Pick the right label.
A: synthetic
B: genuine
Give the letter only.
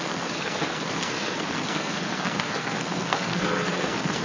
A